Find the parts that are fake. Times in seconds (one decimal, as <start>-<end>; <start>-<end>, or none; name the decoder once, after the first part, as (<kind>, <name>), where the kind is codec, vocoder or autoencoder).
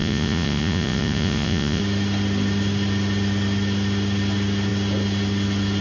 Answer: 0.0-1.8 (vocoder, Vocos)